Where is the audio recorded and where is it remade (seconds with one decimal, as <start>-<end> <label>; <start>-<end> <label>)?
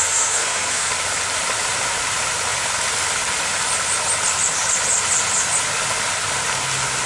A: 0.0-0.9 remade; 0.9-7.1 recorded